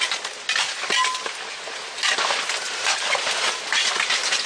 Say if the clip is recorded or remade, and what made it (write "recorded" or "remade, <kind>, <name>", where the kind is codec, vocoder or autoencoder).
recorded